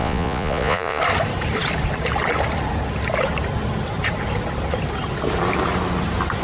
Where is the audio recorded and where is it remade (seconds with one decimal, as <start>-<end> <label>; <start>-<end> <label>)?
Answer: 0.0-1.0 remade; 1.0-6.4 recorded